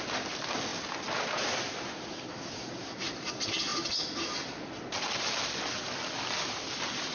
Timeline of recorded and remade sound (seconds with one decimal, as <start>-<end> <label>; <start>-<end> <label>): 0.0-7.1 recorded